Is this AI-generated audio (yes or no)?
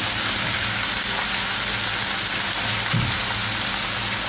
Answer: no